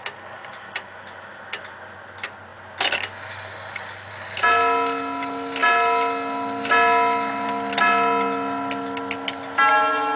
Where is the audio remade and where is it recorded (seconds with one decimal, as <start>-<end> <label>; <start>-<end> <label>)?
0.0-10.2 recorded